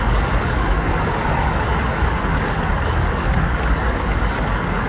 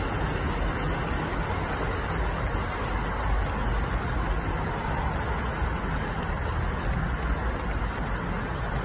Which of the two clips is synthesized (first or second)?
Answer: first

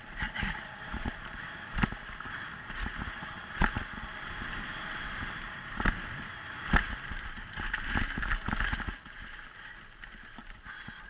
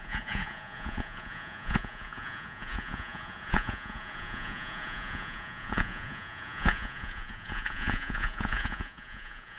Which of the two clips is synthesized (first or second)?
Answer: second